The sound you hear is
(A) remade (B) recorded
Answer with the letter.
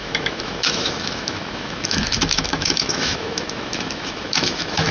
A